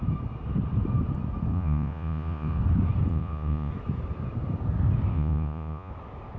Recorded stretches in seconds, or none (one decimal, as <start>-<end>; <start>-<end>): 0.0-1.5; 2.6-3.1; 3.7-5.1; 5.9-6.4